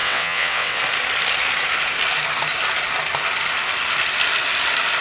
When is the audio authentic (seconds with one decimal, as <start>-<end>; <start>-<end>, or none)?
0.8-5.0